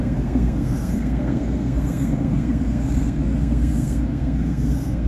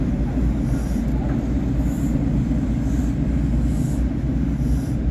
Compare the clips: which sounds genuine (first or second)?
second